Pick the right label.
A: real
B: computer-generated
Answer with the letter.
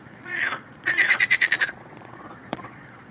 B